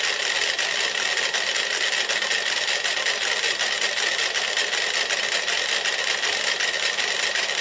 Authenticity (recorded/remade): recorded